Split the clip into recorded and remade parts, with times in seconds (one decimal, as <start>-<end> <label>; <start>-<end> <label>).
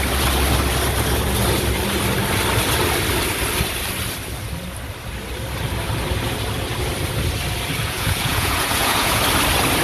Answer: 0.0-7.8 recorded; 7.8-9.2 remade; 9.2-9.8 recorded